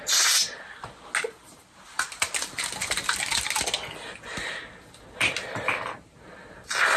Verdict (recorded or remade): recorded